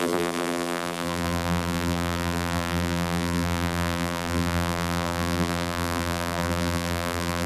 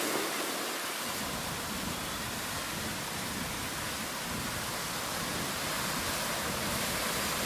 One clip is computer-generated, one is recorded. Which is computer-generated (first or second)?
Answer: first